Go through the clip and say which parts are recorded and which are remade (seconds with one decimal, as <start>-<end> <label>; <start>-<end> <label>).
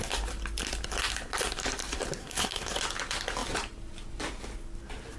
0.0-2.2 recorded; 2.2-2.7 remade; 2.7-5.2 recorded